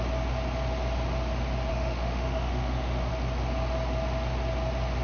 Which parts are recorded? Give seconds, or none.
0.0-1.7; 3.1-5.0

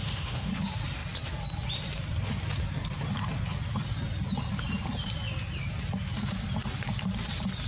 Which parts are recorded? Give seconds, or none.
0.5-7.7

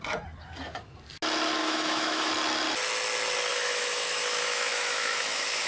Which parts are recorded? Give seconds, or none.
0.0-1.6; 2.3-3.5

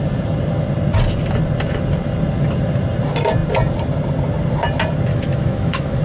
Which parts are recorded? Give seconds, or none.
0.0-5.1

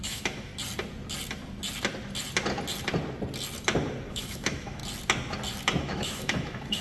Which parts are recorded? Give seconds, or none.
0.5-4.1; 4.8-5.8

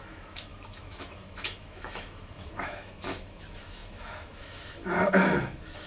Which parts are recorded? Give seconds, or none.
none

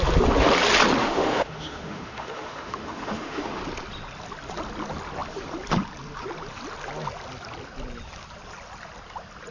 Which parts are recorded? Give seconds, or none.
0.0-1.0; 3.6-9.5

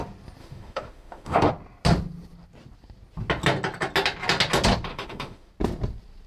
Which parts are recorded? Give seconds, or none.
0.0-0.4; 1.5-4.9; 5.5-6.3